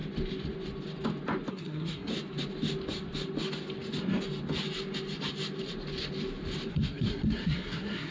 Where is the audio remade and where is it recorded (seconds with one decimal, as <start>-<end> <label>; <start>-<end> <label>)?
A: 0.0-1.5 recorded; 1.5-2.1 remade; 2.1-6.7 recorded; 6.7-8.1 remade